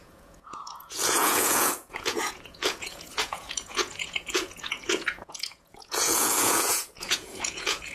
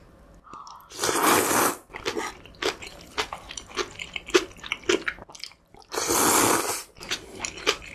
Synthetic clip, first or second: first